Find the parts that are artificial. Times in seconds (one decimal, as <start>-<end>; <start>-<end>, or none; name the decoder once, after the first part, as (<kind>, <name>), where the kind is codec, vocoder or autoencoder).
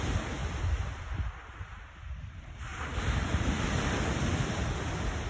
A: 2.7-4.8 (vocoder, BigVGAN v2)